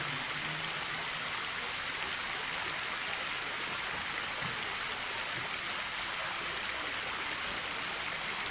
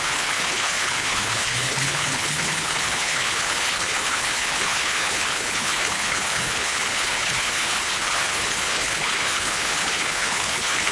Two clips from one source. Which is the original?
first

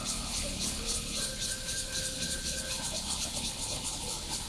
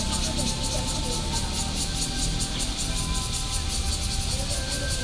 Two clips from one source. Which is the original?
second